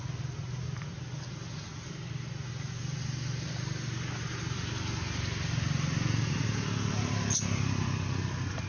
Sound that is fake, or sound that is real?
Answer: real